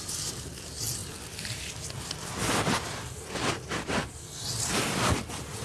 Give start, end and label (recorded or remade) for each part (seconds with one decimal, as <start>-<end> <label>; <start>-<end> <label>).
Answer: 0.0-5.6 recorded